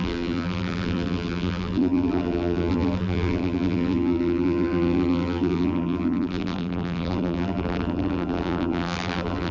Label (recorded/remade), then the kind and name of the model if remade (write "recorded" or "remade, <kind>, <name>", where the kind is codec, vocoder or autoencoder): remade, vocoder, BigVGAN v2